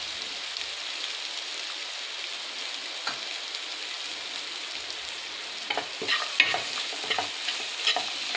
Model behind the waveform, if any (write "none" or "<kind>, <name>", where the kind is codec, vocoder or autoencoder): none